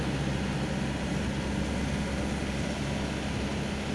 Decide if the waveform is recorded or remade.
recorded